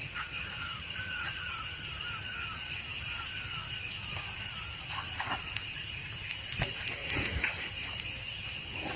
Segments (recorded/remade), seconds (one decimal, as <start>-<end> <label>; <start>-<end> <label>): 0.0-1.9 remade; 1.9-7.0 recorded; 7.0-7.7 remade; 7.7-9.0 recorded